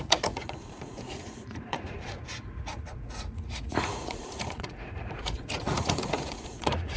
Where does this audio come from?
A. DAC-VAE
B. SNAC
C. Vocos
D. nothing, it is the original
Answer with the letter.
C